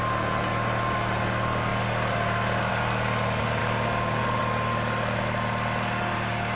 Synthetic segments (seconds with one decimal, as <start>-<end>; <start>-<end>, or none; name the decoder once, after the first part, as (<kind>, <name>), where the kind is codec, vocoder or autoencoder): 3.6-4.4 (codec, DAC)